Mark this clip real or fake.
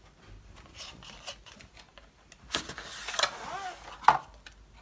real